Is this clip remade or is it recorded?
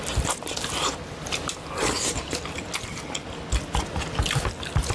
recorded